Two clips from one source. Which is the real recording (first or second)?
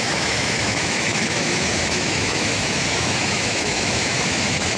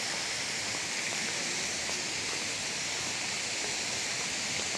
second